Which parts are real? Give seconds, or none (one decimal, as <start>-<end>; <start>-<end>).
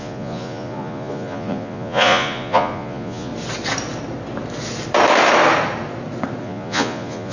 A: 3.3-6.4